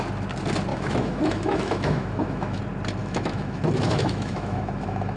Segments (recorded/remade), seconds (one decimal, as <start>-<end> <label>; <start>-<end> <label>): 0.0-0.7 recorded; 0.7-2.6 remade; 2.6-3.0 recorded; 3.0-5.2 remade